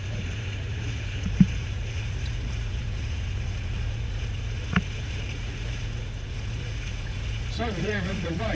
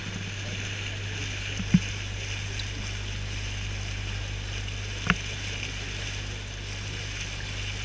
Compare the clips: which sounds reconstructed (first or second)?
first